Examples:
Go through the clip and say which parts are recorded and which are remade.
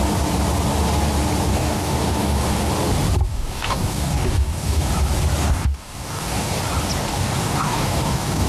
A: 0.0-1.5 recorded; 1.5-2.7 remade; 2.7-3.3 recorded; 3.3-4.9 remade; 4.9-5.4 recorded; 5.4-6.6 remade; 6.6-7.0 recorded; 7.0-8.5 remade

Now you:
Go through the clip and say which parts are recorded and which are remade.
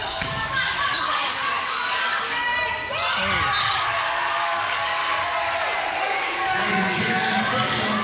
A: 0.0-2.5 remade; 2.5-3.6 recorded; 3.6-5.0 remade; 5.0-6.0 recorded; 6.0-8.0 remade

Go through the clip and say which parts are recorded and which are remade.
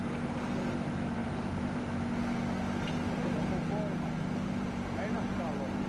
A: 0.0-5.9 recorded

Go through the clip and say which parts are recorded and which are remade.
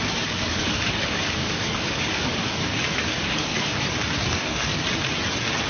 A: 0.0-3.7 remade; 3.7-4.3 recorded; 4.3-4.7 remade; 4.7-5.7 recorded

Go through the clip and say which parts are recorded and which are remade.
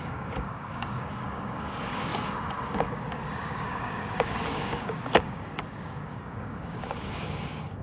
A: 0.0-7.8 remade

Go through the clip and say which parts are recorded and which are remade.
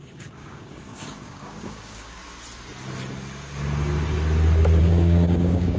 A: 0.0-2.2 remade; 2.2-4.8 recorded; 4.8-5.8 remade